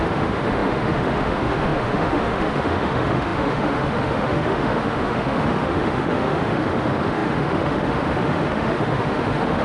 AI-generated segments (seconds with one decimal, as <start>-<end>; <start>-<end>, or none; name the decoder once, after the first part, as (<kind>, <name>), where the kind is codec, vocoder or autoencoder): 0.0-9.6 (autoencoder, DAC-VAE)